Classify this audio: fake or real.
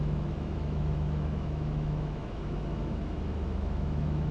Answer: fake